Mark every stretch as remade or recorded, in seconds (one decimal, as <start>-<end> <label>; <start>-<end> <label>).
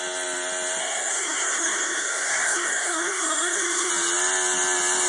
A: 0.0-0.8 recorded; 0.8-3.9 remade; 3.9-5.1 recorded